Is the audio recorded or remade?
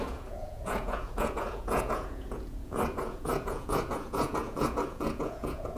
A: remade